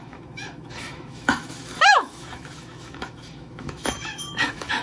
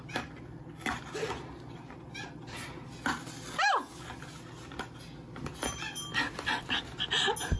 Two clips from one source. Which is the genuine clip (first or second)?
second